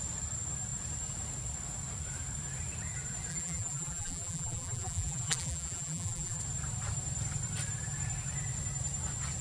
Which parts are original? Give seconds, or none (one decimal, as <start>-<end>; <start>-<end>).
0.0-3.3; 6.4-9.4